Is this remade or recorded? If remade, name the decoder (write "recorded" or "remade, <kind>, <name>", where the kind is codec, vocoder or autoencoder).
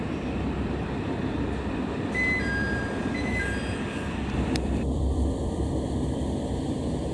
remade, vocoder, BigVGAN v2